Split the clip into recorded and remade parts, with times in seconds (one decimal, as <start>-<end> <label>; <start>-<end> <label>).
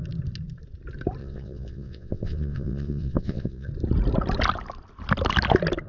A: 0.0-1.2 recorded; 1.2-3.7 remade; 3.7-5.9 recorded